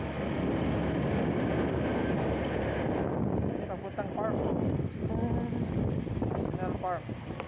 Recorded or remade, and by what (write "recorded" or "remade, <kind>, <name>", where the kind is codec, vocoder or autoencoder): recorded